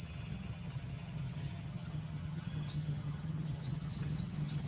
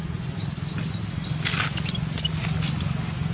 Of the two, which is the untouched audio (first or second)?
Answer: second